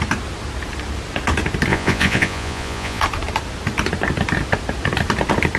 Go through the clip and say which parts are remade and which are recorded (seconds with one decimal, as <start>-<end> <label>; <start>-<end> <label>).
0.0-1.7 recorded; 1.7-3.0 remade; 3.0-5.6 recorded